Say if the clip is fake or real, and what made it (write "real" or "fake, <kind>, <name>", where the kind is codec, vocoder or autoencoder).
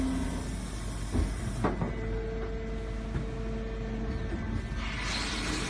real